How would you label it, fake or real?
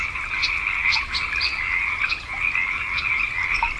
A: real